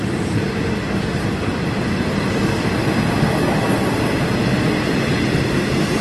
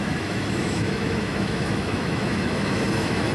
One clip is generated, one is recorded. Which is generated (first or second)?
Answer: second